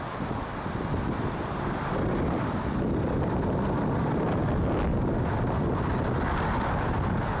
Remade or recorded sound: recorded